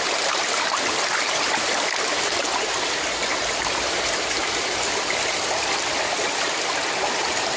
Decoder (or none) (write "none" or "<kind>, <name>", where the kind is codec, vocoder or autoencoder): none